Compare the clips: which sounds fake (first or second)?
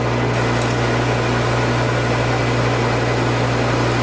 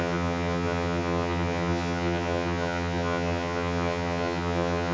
second